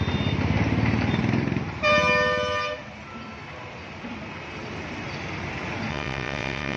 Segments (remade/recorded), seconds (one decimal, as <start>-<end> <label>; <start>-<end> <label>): 0.0-5.9 recorded; 5.9-6.8 remade

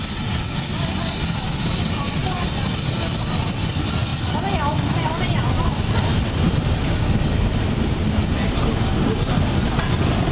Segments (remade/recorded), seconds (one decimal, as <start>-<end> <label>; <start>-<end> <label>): 0.0-10.3 recorded

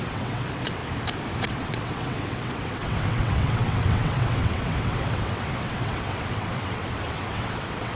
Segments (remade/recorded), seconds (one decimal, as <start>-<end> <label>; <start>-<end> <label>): 0.0-0.8 remade; 0.8-1.4 recorded; 1.4-7.9 remade

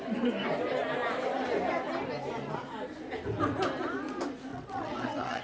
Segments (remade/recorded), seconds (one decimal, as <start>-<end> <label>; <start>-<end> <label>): 0.0-4.5 recorded; 4.5-5.4 remade